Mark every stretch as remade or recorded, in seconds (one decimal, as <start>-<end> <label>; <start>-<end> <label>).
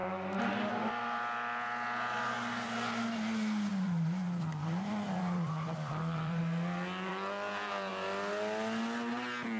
0.0-0.7 remade; 0.7-3.7 recorded; 3.7-6.4 remade; 6.4-9.6 recorded